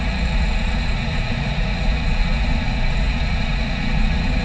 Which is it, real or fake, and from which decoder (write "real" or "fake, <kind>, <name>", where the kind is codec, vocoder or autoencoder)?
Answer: fake, vocoder, Vocos